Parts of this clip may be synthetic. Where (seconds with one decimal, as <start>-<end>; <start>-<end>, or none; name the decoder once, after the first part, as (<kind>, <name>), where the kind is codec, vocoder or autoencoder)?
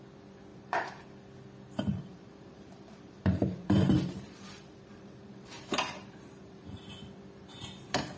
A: 0.5-1.0 (vocoder, BigVGAN v2); 1.9-6.8; 7.5-8.2